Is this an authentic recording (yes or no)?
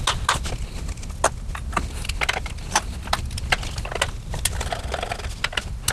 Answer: yes